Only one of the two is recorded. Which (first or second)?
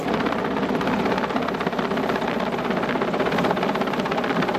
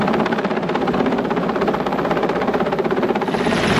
second